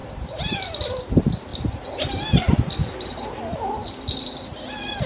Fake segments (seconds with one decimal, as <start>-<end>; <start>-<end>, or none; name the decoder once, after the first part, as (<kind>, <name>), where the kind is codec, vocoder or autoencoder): 0.0-0.9 (vocoder, BigVGAN v2); 1.5-4.6